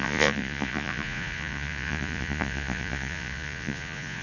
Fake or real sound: fake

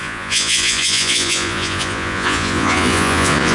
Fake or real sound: fake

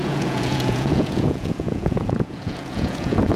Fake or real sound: fake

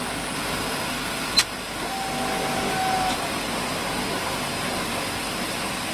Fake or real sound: real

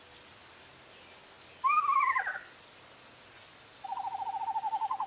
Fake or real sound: real